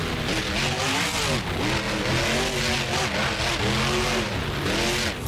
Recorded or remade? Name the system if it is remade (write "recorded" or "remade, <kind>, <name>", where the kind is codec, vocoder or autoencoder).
recorded